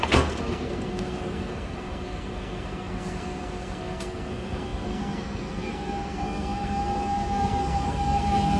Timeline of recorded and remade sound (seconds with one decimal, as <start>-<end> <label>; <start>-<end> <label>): 0.0-8.6 remade